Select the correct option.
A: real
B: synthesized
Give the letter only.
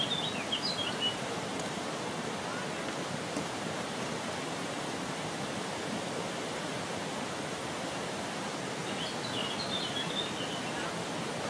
A